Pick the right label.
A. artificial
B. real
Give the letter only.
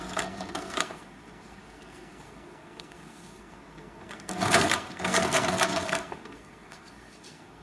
A